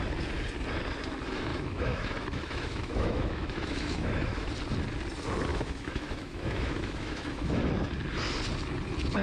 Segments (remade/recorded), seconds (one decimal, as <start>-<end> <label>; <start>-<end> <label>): 0.0-1.5 recorded; 1.5-4.5 remade; 4.5-5.5 recorded; 5.5-7.6 remade; 7.6-9.2 recorded